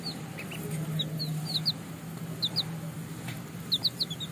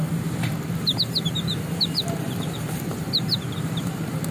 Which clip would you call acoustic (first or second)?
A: first